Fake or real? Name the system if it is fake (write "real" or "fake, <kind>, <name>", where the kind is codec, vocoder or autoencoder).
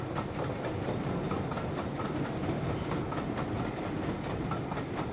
real